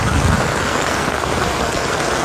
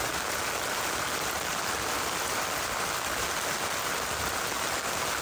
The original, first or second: second